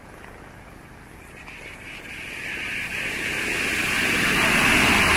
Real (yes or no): yes